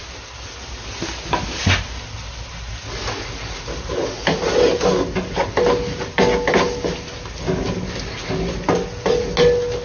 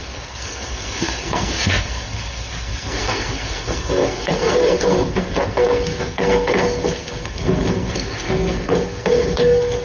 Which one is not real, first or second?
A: second